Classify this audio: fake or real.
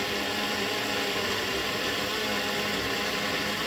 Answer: real